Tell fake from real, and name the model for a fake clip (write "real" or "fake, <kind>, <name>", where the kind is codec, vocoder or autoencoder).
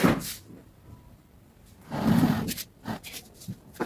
fake, vocoder, BigVGAN v2